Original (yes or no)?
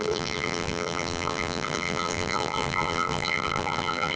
no